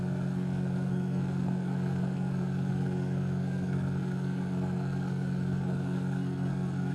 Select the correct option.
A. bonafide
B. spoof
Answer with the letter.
B